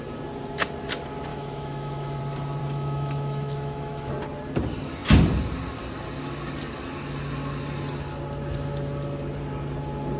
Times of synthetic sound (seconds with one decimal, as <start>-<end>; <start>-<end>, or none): 1.3-2.2; 2.6-4.1